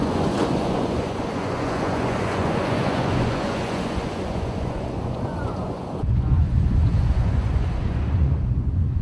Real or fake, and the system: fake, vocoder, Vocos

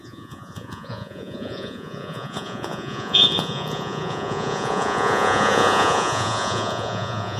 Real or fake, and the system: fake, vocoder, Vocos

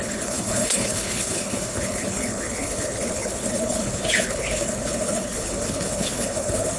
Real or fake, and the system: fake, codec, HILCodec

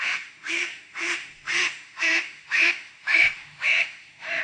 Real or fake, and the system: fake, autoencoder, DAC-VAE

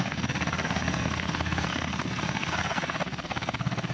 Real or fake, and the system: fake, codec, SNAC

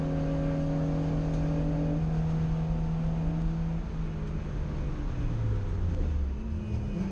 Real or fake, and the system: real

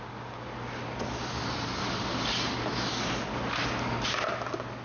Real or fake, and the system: real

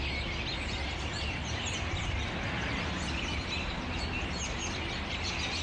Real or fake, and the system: real